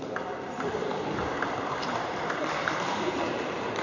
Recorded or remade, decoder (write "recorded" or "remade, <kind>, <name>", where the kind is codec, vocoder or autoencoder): remade, vocoder, BigVGAN v2